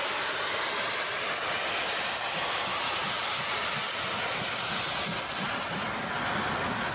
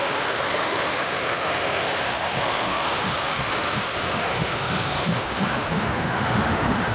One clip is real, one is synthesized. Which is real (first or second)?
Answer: first